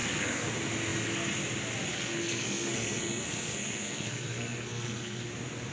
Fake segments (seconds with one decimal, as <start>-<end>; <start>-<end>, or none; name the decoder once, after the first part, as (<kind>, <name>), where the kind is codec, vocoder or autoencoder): 0.0-0.5 (codec, SNAC); 1.9-5.3